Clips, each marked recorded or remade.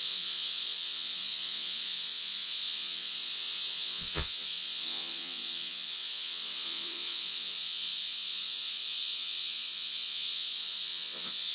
remade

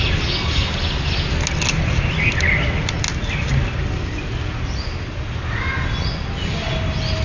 recorded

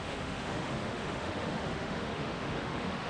remade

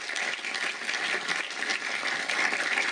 recorded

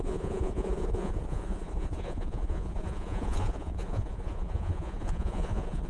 remade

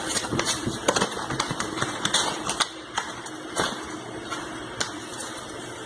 remade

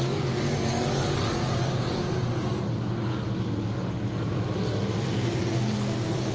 recorded